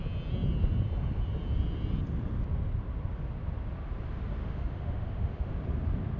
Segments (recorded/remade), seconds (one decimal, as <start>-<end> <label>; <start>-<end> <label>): 0.0-4.4 recorded; 4.4-5.5 remade; 5.5-6.2 recorded